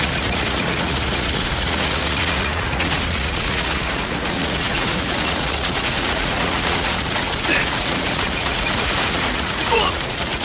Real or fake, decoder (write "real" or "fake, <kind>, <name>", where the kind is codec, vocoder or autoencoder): fake, vocoder, Vocos